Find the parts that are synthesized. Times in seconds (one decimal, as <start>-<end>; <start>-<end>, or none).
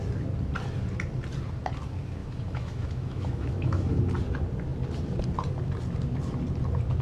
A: 2.2-4.0